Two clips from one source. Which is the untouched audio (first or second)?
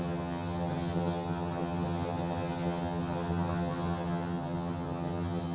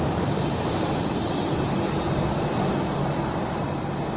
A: second